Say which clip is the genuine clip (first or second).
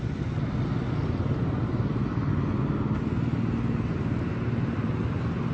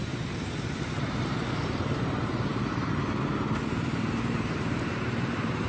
first